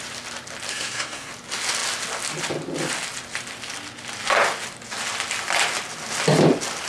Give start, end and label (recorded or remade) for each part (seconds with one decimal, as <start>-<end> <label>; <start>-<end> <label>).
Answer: 0.0-0.7 recorded; 0.7-1.3 remade; 1.3-6.9 recorded